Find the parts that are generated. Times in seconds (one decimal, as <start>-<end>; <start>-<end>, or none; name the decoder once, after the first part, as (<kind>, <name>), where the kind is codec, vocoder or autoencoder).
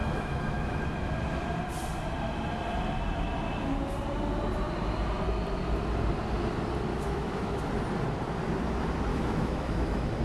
0.0-0.8 (autoencoder, DAC-VAE); 6.9-7.6; 9.1-10.2